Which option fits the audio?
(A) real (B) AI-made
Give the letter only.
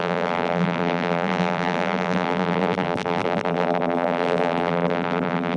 B